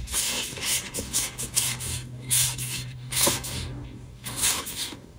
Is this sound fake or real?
fake